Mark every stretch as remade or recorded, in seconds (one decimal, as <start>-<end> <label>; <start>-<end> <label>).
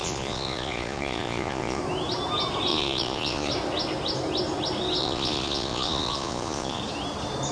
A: 0.0-1.8 remade; 1.8-2.7 recorded; 2.7-3.5 remade; 3.5-5.0 recorded; 5.0-6.8 remade; 6.8-7.5 recorded